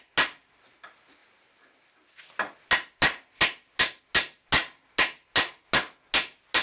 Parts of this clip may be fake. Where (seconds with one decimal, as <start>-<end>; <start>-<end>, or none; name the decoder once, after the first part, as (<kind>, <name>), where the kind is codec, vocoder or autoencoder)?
none